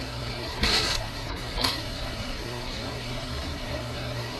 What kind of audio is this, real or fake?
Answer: fake